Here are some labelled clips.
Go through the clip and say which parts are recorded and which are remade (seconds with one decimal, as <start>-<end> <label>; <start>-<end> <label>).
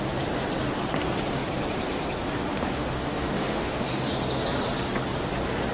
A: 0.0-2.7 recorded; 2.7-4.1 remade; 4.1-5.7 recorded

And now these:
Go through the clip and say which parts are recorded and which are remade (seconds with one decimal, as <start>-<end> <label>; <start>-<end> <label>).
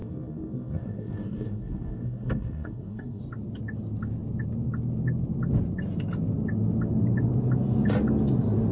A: 0.0-3.2 remade; 3.2-8.7 recorded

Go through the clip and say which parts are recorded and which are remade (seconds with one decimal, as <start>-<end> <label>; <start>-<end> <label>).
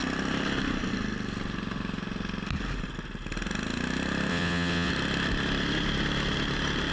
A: 0.0-4.3 recorded; 4.3-4.9 remade; 4.9-6.9 recorded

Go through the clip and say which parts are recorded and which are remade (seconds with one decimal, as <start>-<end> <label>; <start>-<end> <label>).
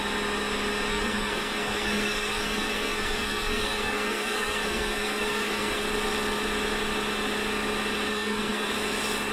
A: 0.0-0.9 recorded; 0.9-5.8 remade; 5.8-8.1 recorded; 8.1-8.7 remade; 8.7-9.3 recorded